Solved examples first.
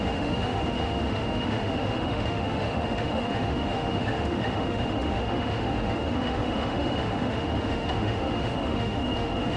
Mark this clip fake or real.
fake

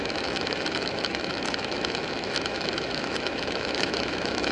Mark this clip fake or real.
fake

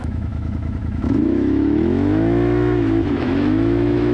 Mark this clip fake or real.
fake